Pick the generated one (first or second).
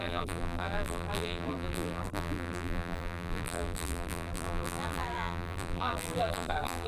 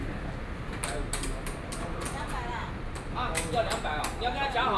first